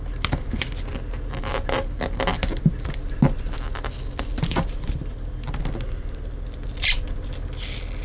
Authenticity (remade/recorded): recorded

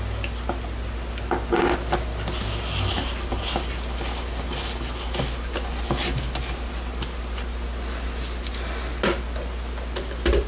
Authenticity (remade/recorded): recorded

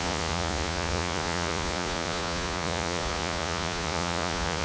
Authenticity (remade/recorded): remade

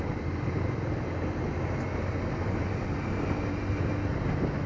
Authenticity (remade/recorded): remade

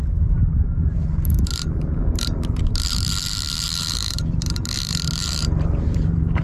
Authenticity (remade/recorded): remade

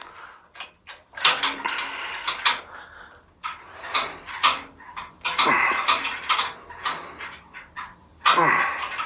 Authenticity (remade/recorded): remade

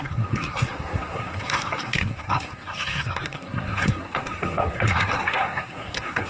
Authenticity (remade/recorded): remade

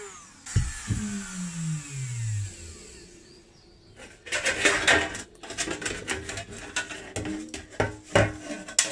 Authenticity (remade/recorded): recorded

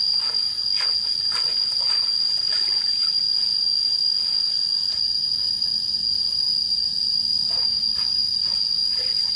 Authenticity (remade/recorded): recorded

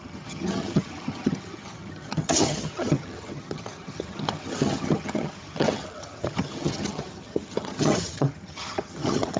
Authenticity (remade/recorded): remade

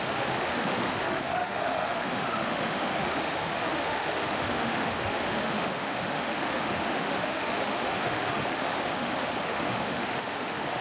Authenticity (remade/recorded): remade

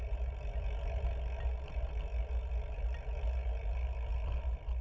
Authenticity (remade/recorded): recorded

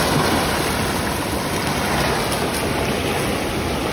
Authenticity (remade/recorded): recorded